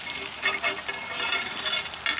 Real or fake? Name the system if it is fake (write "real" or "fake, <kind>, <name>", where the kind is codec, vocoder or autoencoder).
real